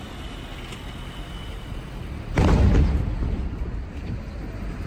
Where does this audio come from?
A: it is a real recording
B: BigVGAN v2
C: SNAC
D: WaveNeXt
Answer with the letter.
A